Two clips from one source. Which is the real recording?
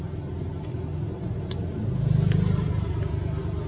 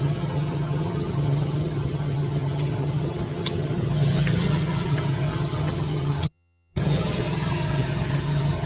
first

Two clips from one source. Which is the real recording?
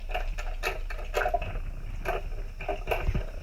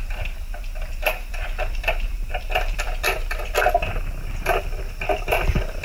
first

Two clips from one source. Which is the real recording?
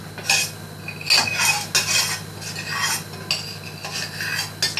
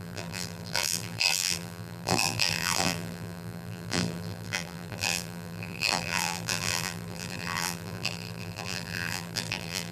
first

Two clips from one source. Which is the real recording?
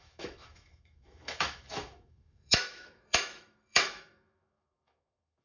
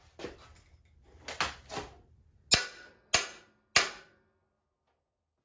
second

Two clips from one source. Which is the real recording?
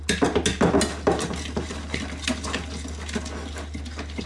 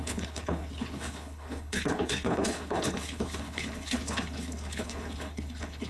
first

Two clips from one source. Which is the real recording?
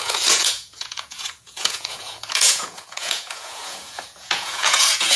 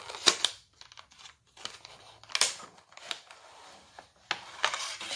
second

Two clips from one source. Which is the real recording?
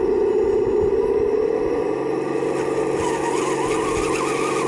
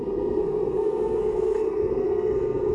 first